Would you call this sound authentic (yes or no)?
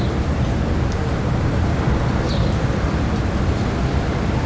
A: yes